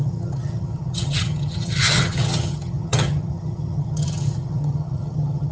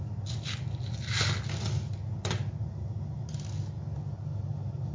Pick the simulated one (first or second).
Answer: first